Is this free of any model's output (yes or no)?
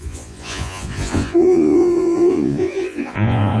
no